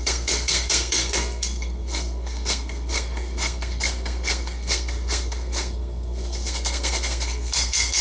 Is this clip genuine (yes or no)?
no